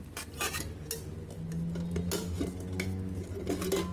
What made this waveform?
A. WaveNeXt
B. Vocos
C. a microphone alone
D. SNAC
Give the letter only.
C